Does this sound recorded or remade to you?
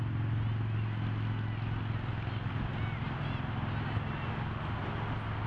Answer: recorded